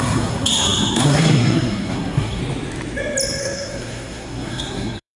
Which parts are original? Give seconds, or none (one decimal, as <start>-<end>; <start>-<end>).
2.4-3.4